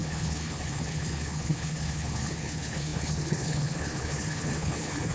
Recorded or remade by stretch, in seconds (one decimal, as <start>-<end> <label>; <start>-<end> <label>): 0.0-5.1 remade

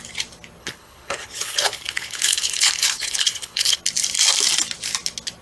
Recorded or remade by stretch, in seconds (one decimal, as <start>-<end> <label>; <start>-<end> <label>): 0.0-0.6 recorded; 0.6-3.8 remade; 3.8-5.4 recorded